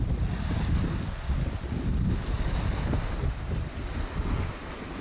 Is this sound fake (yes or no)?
no